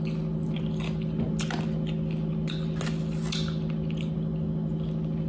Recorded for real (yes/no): yes